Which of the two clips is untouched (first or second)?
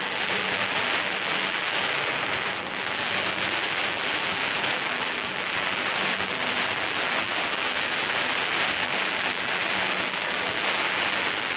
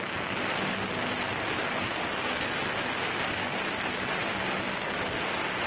second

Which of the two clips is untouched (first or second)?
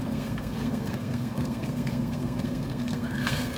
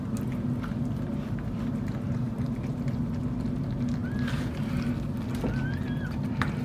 second